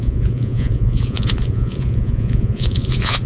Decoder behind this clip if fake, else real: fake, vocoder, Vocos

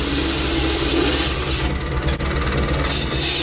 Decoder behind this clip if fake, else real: real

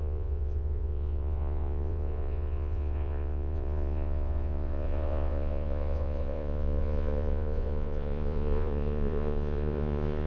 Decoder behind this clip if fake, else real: fake, vocoder, Vocos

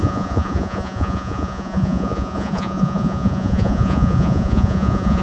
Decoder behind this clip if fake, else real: fake, vocoder, Vocos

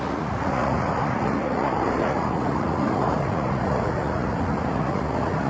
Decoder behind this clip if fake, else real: fake, vocoder, Vocos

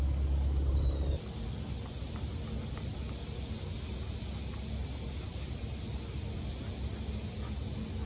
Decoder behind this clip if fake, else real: real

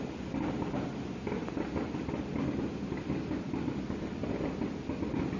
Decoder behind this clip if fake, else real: real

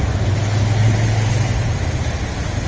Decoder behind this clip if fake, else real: real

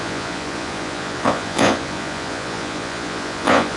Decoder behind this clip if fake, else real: fake, vocoder, Vocos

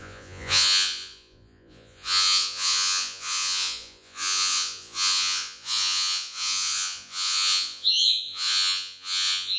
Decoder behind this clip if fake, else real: fake, vocoder, Vocos